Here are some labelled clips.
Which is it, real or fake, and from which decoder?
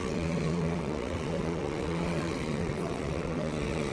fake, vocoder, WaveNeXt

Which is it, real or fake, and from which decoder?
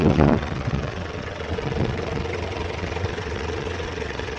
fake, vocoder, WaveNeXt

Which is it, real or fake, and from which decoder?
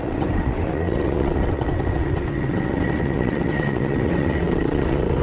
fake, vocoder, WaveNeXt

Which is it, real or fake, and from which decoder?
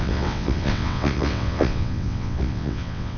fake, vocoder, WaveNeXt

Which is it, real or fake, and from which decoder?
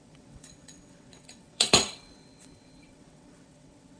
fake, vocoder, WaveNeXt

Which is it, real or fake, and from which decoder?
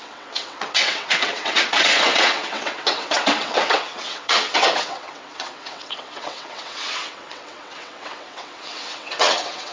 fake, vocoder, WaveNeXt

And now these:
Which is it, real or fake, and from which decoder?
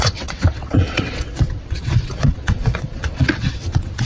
fake, vocoder, WaveNeXt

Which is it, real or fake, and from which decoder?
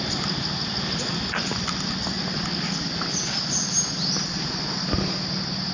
real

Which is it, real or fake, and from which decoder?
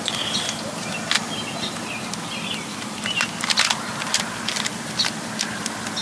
real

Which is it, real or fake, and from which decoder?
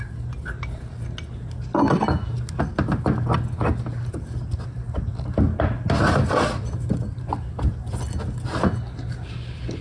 real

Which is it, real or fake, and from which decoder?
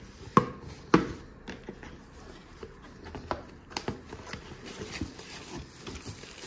real